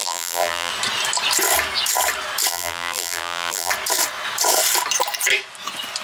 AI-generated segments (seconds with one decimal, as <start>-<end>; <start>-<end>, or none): 0.0-0.7; 2.5-3.7